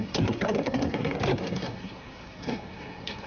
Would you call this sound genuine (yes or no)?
no